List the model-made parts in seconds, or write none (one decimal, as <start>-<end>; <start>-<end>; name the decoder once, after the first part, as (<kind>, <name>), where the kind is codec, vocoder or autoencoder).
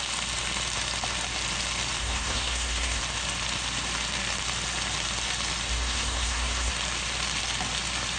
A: 2.0-3.0 (codec, SNAC); 5.7-6.7